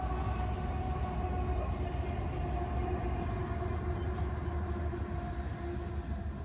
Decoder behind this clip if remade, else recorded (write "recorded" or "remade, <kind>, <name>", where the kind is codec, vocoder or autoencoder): recorded